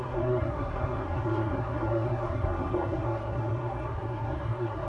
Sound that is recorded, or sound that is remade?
remade